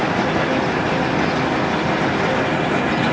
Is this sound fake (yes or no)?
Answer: no